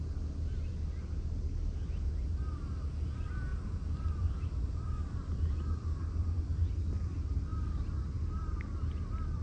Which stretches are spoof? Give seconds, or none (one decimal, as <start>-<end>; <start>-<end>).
none